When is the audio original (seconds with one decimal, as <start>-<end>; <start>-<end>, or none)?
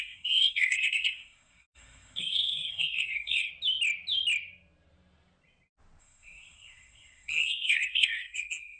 3.5-6.0